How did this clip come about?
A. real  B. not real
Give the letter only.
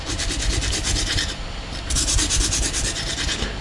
A